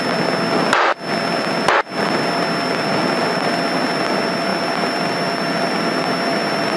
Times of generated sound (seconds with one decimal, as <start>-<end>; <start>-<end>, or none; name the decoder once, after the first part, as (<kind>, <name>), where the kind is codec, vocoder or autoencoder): none